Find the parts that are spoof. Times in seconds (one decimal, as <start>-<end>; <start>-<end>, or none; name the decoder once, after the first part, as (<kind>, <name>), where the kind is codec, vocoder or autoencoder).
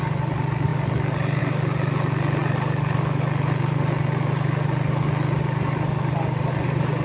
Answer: none